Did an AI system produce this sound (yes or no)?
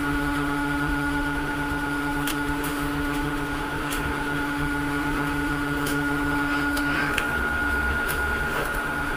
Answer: yes